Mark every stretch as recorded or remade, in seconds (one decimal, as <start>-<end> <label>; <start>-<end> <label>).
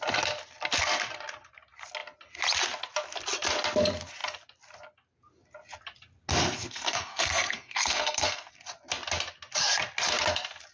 0.0-6.4 recorded; 6.4-8.5 remade; 8.5-10.7 recorded